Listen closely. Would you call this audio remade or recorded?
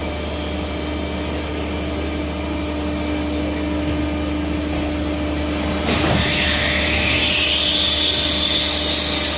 recorded